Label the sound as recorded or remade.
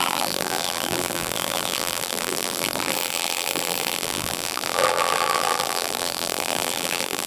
remade